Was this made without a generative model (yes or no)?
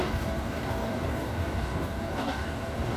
no